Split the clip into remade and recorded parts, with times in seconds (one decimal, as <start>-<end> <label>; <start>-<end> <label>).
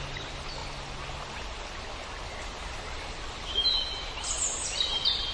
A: 0.0-5.3 recorded